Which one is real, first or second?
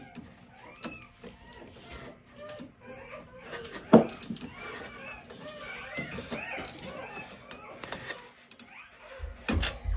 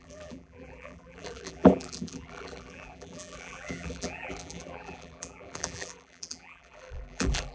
first